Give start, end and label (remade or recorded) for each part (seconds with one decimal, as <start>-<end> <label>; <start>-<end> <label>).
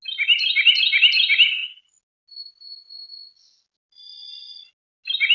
0.0-5.3 recorded